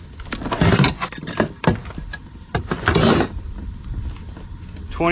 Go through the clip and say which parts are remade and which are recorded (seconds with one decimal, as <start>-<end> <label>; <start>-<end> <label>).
0.0-5.1 recorded